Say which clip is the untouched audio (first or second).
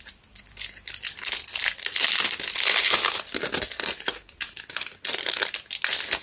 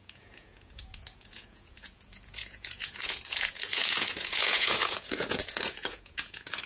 first